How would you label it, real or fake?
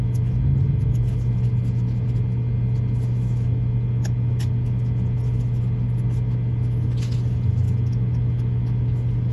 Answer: real